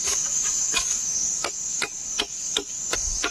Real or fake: fake